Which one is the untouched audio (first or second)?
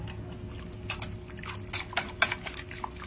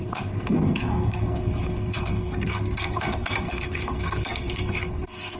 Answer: first